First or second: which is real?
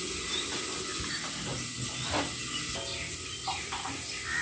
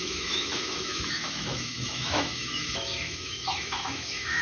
first